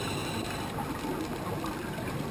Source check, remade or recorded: recorded